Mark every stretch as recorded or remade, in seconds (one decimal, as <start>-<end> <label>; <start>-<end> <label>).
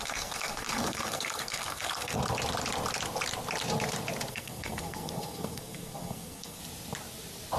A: 0.0-2.2 remade; 2.2-4.3 recorded; 4.3-6.6 remade; 6.6-7.6 recorded